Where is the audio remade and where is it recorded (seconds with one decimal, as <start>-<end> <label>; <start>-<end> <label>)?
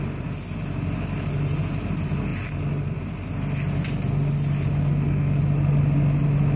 0.0-4.8 recorded; 4.8-5.4 remade; 5.4-6.6 recorded